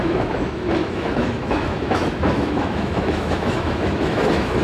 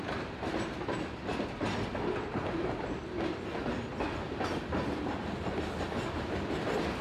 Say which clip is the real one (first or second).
second